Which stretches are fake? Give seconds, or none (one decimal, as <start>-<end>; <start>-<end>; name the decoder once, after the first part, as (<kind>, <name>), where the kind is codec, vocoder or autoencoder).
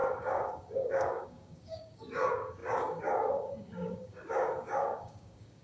0.0-5.6 (codec, DAC)